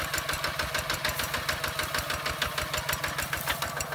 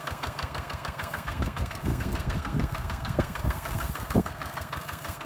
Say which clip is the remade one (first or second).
second